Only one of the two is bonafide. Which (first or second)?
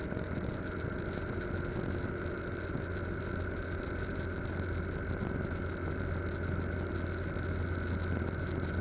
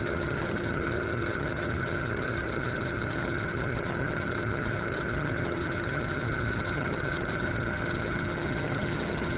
first